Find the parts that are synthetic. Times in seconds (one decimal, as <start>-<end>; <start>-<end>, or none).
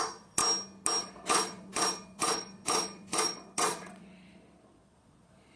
0.0-0.4; 1.0-5.6